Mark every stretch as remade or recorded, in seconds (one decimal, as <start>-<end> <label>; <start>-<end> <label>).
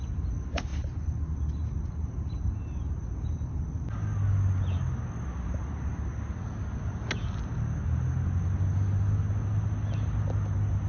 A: 0.0-10.9 recorded